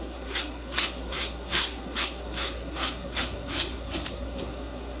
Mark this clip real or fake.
fake